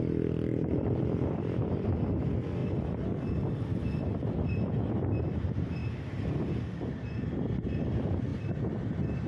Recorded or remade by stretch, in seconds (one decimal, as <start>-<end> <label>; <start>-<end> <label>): 0.0-9.3 remade